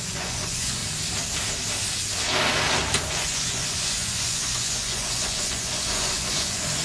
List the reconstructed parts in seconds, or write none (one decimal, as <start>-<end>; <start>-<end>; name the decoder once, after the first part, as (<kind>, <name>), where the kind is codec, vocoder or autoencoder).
0.0-0.8 (vocoder, Vocos); 3.1-6.8